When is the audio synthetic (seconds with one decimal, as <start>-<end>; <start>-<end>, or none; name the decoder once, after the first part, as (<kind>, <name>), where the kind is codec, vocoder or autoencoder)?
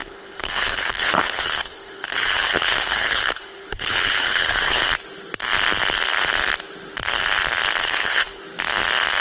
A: 0.0-4.8 (codec, HILCodec); 7.8-8.4